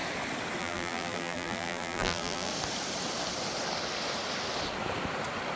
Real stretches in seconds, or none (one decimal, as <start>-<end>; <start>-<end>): 0.0-0.6; 2.5-5.6